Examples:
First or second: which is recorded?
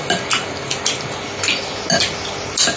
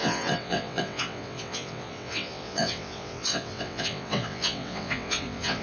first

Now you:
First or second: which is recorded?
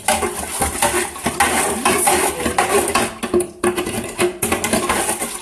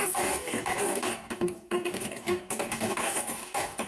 first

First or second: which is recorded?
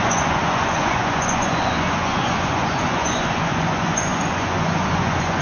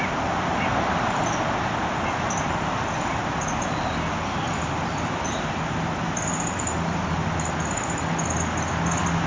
second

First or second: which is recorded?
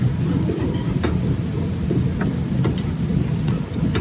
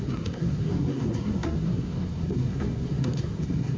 first